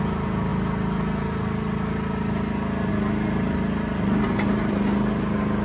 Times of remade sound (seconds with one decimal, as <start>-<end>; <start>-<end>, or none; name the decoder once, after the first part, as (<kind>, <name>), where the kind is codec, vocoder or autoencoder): none